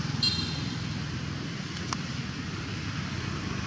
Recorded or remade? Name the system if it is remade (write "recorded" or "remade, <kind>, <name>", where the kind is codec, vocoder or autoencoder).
recorded